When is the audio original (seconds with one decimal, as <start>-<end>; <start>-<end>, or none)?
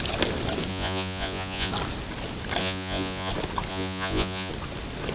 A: 0.0-0.7; 1.7-2.6; 3.3-3.7; 4.5-5.1